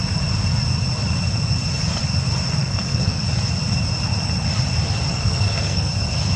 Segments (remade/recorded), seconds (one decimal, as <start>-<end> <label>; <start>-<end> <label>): 0.0-2.6 recorded; 2.6-3.2 remade; 3.2-5.1 recorded; 5.1-5.9 remade; 5.9-6.4 recorded